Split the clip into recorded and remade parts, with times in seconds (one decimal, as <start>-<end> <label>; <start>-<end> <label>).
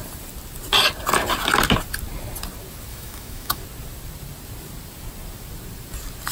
0.0-2.9 recorded; 2.9-3.6 remade; 3.6-6.3 recorded